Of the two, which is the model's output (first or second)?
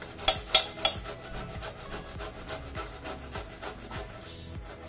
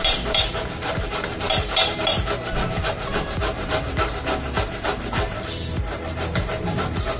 second